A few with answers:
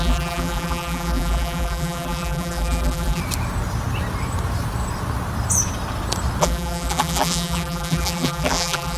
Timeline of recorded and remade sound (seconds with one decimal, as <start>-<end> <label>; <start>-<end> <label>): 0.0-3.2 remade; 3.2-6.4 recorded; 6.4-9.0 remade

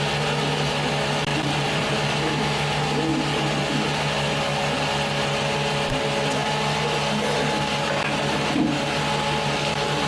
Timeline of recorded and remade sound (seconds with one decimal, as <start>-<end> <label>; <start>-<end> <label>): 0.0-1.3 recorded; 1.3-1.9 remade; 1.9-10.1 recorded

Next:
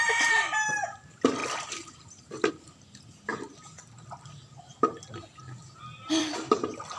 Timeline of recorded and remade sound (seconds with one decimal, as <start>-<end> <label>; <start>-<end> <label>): 0.0-1.4 recorded; 1.4-2.5 remade; 2.5-7.0 recorded

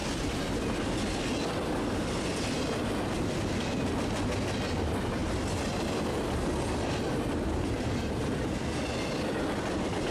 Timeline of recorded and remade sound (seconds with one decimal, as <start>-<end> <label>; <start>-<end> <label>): 0.0-10.1 recorded

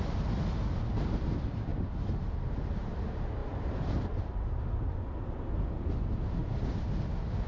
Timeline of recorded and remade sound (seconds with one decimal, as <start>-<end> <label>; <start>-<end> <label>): 0.0-1.7 recorded; 1.7-2.3 remade; 2.3-3.4 recorded; 3.4-4.7 remade; 4.7-7.5 recorded

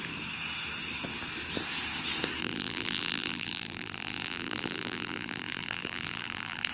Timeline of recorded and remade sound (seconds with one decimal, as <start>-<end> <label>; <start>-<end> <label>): 0.0-2.4 recorded; 2.4-6.7 remade

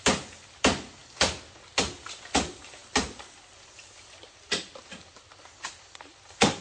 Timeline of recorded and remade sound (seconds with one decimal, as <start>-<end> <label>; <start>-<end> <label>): 0.0-6.6 recorded